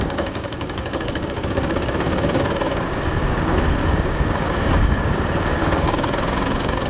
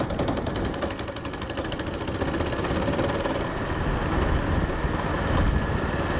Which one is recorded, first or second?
second